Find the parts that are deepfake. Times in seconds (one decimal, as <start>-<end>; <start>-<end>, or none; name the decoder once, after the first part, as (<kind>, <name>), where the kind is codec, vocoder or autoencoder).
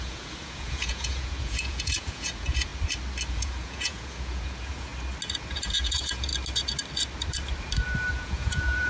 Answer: 0.0-2.7 (vocoder, Vocos); 3.3-4.9; 5.4-6.3; 8.1-8.9